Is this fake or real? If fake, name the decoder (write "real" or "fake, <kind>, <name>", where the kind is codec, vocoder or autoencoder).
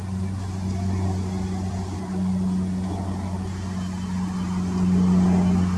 real